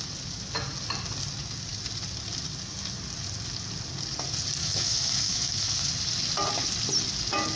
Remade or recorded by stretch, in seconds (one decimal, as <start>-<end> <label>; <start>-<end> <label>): 0.0-4.6 recorded; 4.6-5.9 remade; 5.9-7.6 recorded